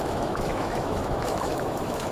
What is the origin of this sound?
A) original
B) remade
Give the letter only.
B